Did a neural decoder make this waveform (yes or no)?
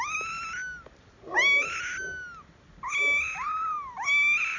no